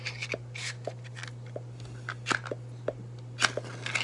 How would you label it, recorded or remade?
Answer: recorded